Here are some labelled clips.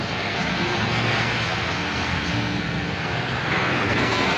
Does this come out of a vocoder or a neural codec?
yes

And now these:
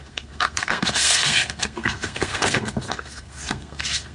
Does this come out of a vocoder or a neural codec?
yes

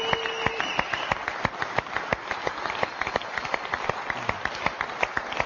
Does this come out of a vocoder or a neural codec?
no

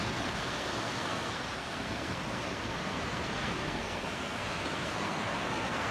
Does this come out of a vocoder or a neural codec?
yes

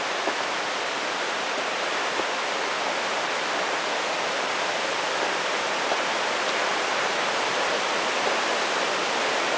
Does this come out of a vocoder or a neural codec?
no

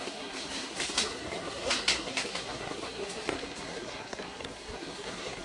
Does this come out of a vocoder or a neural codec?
yes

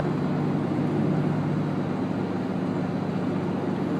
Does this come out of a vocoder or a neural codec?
no